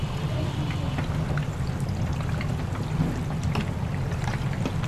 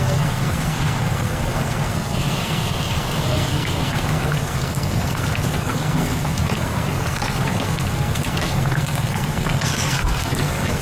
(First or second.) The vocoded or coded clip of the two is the second